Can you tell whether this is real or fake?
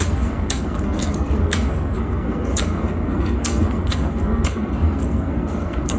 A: fake